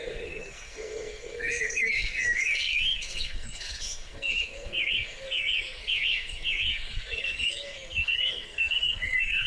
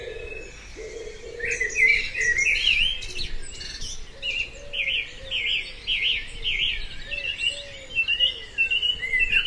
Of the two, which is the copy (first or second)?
first